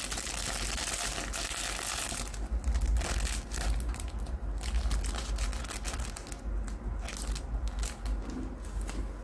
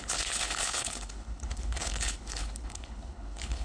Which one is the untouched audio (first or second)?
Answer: first